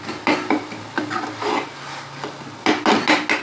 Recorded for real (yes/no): yes